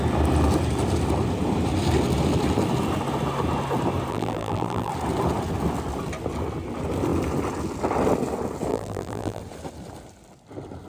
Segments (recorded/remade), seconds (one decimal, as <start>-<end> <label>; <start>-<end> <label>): 0.0-4.1 recorded; 4.1-4.9 remade; 4.9-8.7 recorded; 8.7-9.4 remade; 9.4-10.9 recorded